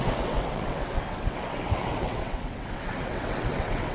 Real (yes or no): no